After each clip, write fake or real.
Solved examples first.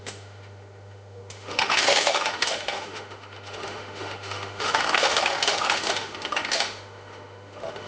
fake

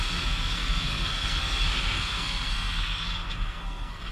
fake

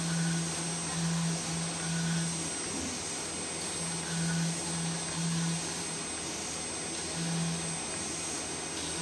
real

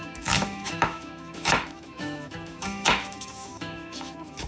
fake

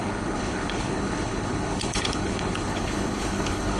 fake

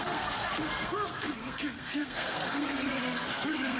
fake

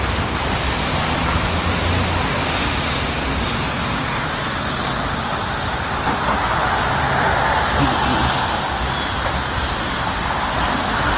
real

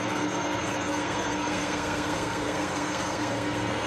fake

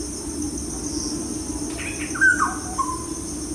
real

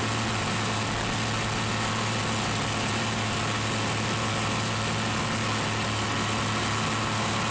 real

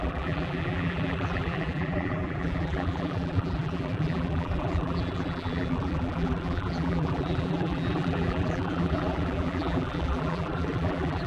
fake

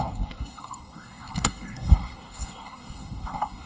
fake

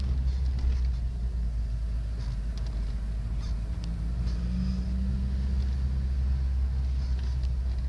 real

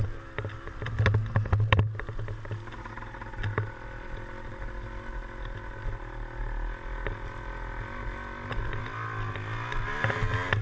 real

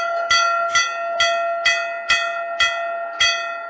real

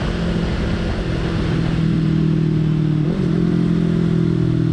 real